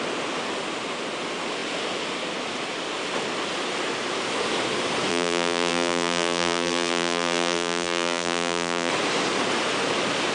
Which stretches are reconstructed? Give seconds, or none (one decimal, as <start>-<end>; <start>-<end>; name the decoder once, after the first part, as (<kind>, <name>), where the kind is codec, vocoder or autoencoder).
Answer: 5.1-8.9 (vocoder, BigVGAN v2)